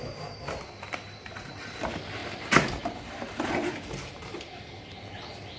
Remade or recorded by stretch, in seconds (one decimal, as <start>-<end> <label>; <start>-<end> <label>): 0.0-2.2 recorded; 2.2-5.6 remade